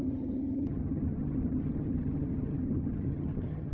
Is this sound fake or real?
fake